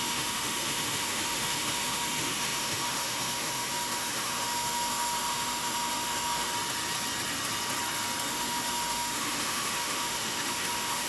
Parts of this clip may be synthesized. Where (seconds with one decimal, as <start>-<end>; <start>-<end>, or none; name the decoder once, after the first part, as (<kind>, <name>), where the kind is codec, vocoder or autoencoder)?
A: 0.0-6.5 (autoencoder, DAC-VAE); 8.3-11.1